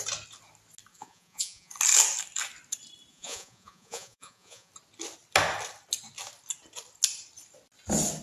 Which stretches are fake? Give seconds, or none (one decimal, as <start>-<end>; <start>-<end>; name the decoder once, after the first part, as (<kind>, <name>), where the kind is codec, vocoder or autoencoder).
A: 0.9-1.7 (vocoder, Vocos); 3.1-4.7